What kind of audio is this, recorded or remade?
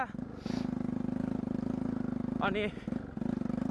recorded